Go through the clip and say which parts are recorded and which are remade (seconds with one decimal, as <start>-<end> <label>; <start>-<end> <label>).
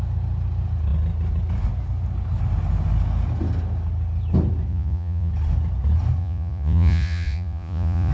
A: 0.0-4.7 recorded; 4.7-5.3 remade; 5.3-6.2 recorded; 6.2-8.1 remade